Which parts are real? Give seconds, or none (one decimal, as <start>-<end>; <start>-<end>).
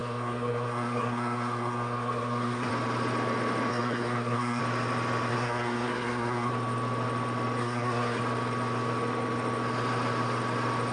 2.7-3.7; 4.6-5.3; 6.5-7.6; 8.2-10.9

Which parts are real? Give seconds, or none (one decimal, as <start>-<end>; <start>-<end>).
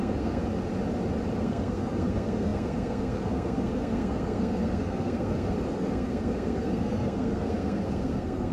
0.4-1.4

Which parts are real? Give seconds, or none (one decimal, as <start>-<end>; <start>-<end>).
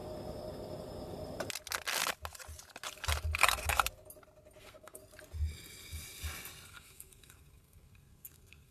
0.0-4.6; 5.0-6.7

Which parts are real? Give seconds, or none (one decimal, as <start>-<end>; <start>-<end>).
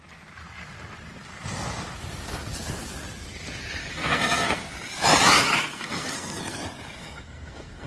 0.0-3.8; 4.7-5.4; 6.6-7.0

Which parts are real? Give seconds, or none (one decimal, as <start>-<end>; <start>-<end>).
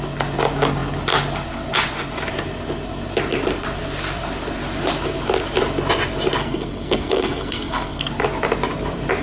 0.0-6.4; 8.1-9.2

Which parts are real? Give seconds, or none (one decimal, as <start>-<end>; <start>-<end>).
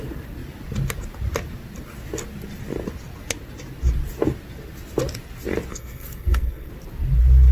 0.0-5.7; 6.7-7.5